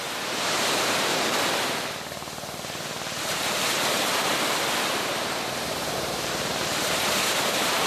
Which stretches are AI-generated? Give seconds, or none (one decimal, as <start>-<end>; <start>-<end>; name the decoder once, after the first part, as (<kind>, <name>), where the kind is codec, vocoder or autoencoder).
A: 0.0-1.1 (vocoder, BigVGAN v2); 3.2-4.4; 5.5-7.9